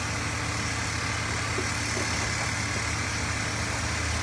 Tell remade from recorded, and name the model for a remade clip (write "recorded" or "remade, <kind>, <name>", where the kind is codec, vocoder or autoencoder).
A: recorded